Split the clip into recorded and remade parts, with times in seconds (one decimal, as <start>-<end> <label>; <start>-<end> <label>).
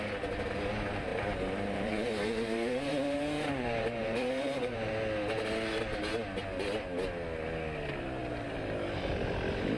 0.0-1.1 recorded; 1.1-4.9 remade; 4.9-9.8 recorded